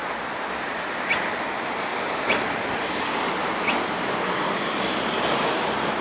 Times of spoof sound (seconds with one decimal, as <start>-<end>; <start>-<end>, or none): none